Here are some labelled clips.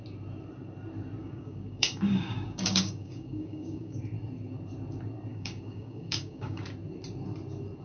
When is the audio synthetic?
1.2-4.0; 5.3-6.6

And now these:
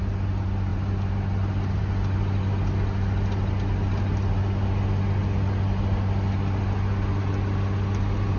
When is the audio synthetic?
none

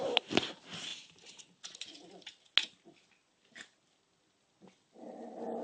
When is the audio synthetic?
none

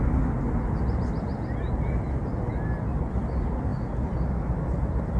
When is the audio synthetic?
none

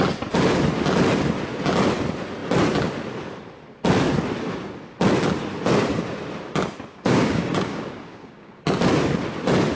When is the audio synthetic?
6.9-8.6

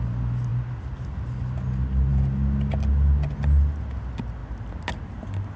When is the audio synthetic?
none

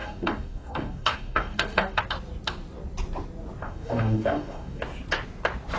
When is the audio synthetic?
0.0-2.0; 3.6-4.8

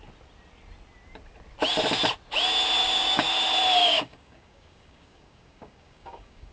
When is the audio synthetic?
2.8-3.3; 3.8-6.5